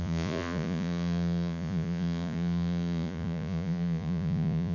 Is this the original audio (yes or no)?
no